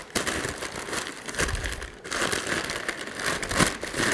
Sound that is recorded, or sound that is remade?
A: recorded